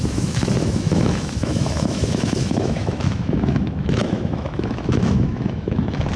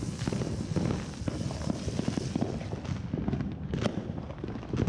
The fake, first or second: first